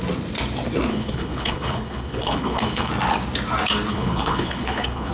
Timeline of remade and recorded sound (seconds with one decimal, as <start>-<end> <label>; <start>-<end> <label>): 0.0-0.9 recorded; 0.9-2.9 remade; 2.9-3.9 recorded; 3.9-5.1 remade